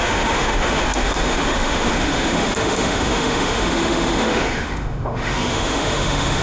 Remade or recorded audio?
remade